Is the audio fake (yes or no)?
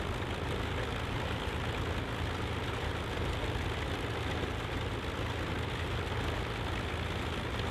no